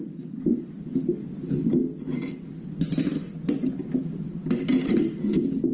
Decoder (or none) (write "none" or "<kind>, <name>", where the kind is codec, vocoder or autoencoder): none